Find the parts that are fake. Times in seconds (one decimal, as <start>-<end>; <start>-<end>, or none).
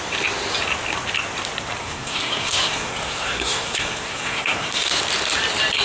1.8-5.0